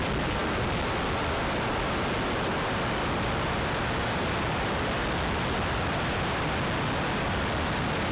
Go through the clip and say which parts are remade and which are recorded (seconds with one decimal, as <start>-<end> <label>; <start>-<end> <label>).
0.0-8.1 recorded